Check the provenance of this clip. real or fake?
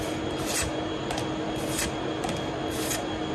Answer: real